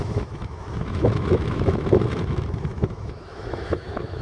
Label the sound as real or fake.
fake